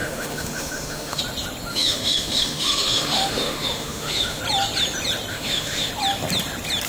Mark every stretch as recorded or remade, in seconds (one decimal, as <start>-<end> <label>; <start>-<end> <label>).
0.0-1.2 remade; 1.2-1.7 recorded; 1.7-4.4 remade; 4.4-5.3 recorded; 5.3-5.9 remade; 5.9-6.9 recorded